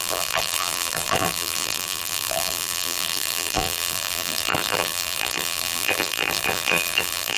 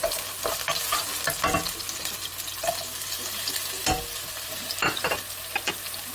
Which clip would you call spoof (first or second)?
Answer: first